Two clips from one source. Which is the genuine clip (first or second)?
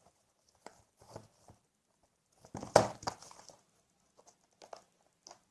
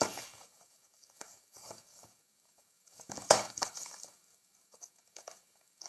first